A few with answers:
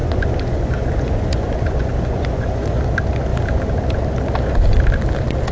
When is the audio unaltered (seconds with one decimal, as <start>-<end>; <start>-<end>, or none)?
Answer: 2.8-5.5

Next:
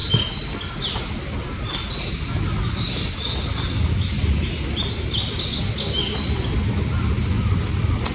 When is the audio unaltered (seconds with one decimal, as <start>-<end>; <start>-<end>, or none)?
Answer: 0.0-8.1

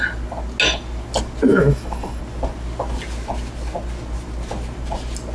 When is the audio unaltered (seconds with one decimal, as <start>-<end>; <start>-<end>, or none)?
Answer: 0.0-1.5; 2.2-5.3

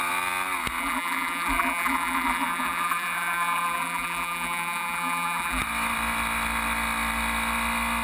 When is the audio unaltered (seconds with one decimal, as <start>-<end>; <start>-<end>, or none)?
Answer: 0.0-0.8; 5.6-8.0

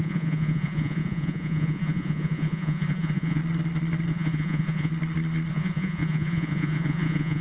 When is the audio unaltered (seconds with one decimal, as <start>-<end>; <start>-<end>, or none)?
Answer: 3.4-4.1; 4.9-5.5